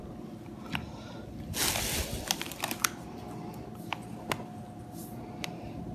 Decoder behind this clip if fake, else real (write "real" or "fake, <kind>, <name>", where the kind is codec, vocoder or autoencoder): real